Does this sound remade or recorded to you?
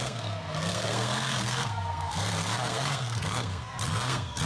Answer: remade